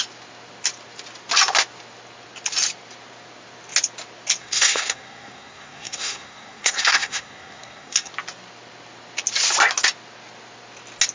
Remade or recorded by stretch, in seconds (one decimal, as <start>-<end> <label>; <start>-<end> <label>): 0.0-4.4 recorded; 4.4-8.1 remade; 8.1-11.1 recorded